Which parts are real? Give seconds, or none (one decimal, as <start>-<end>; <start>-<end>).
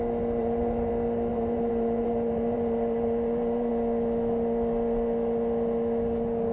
0.0-0.4; 0.9-1.3; 3.7-6.5